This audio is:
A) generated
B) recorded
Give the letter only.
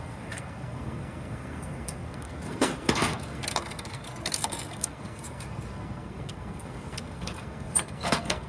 A